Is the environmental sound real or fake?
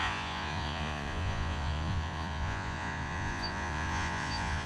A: fake